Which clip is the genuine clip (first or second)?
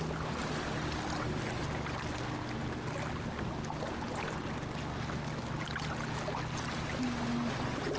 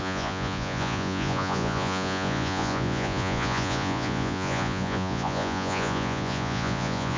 first